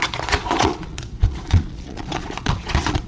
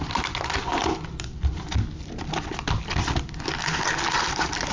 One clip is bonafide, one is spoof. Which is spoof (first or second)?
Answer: first